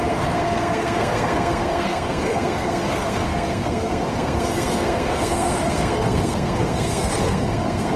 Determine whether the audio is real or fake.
fake